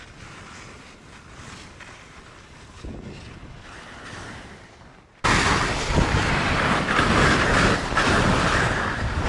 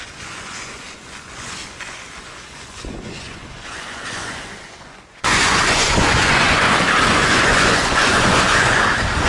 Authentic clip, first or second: first